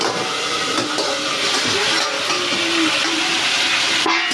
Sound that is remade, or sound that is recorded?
recorded